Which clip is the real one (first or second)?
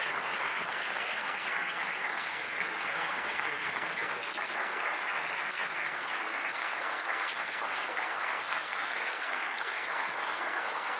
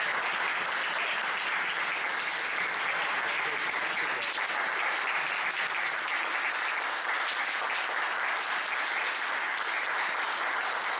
second